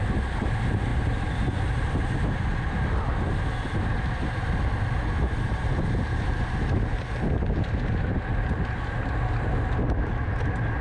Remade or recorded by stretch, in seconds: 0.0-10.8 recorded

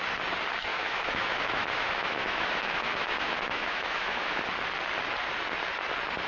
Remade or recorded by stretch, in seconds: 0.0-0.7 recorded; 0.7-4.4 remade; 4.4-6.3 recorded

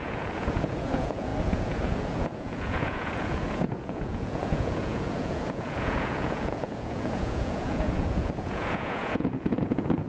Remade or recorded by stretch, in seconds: 0.0-10.1 remade